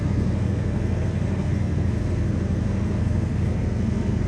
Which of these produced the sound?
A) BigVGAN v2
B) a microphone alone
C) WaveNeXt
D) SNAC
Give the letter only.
D